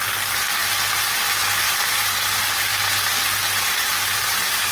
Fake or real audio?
real